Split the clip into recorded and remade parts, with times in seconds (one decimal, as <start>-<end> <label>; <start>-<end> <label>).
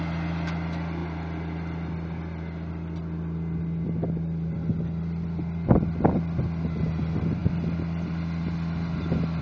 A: 0.0-9.4 recorded